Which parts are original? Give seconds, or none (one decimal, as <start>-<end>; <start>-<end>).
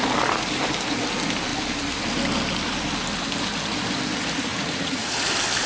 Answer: 0.0-4.5; 5.3-5.7